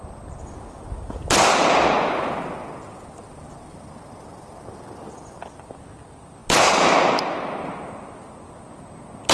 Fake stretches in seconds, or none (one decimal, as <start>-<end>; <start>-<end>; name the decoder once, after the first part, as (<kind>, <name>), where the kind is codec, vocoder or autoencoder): none